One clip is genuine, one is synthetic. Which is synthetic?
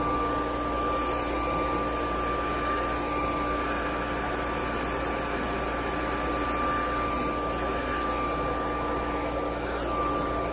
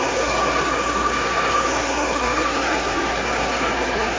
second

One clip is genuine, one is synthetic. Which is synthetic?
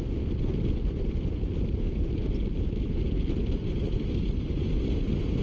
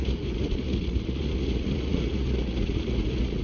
second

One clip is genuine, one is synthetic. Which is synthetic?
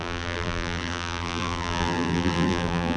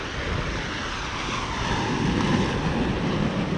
first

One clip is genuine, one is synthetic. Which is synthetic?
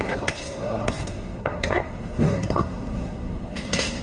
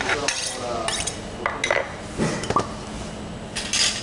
first